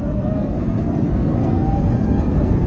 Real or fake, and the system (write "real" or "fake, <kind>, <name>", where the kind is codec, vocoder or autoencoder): fake, codec, SNAC